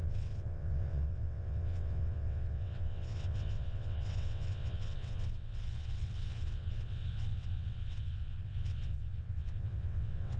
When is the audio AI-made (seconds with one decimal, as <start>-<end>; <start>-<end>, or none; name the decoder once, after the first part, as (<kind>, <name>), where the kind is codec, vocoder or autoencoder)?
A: 0.0-10.4 (vocoder, WaveNeXt)